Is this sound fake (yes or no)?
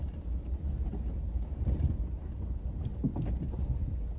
no